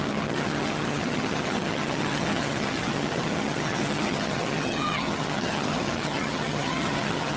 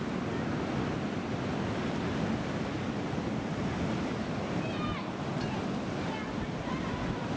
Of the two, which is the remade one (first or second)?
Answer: first